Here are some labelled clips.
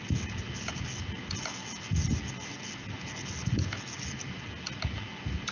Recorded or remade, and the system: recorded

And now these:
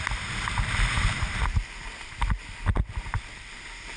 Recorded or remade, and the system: recorded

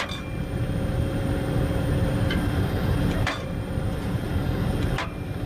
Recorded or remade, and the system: remade, vocoder, BigVGAN v2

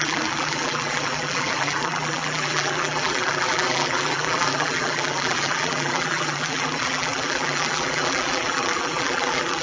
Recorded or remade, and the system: remade, vocoder, BigVGAN v2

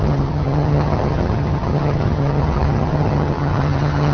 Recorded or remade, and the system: remade, vocoder, HiFi-GAN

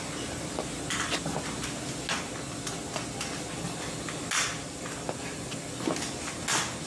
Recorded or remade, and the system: recorded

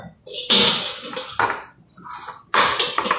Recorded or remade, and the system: recorded